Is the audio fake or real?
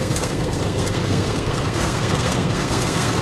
fake